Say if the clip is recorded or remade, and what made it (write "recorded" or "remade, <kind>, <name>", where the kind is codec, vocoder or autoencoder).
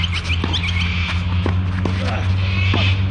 recorded